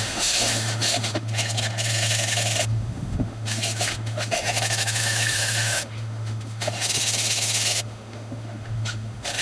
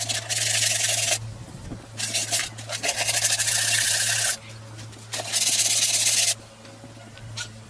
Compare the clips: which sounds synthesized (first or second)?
first